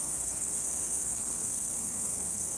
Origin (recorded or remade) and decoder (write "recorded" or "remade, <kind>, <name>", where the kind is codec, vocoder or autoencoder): remade, codec, SNAC